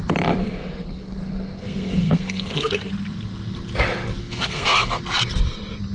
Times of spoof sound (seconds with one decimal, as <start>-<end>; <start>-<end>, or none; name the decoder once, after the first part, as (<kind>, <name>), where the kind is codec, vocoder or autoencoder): 0.4-2.9 (codec, SNAC); 4.2-5.0